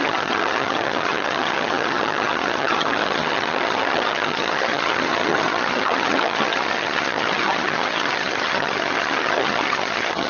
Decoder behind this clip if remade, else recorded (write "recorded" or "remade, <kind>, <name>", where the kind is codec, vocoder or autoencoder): remade, vocoder, HiFi-GAN